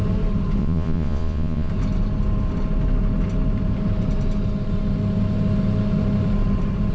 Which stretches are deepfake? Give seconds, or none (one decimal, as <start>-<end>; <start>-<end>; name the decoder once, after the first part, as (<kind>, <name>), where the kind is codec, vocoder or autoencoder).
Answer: 0.6-1.7 (vocoder, Vocos)